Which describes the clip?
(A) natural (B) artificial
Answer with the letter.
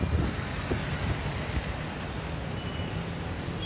A